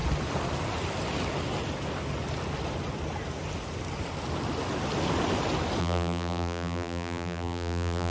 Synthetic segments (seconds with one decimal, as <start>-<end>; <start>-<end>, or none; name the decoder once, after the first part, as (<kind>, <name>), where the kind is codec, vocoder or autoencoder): 5.8-8.1 (vocoder, BigVGAN v2)